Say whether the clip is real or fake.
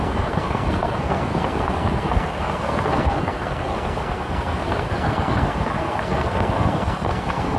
fake